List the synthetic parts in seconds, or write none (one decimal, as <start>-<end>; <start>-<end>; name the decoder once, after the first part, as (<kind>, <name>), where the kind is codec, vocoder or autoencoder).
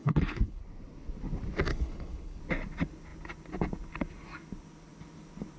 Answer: 0.0-0.6 (codec, HILCodec); 1.7-2.4